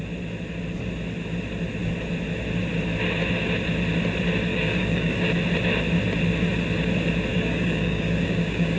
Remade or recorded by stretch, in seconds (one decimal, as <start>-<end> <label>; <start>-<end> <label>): 0.0-4.5 recorded; 4.5-5.3 remade; 5.3-7.3 recorded; 7.3-8.8 remade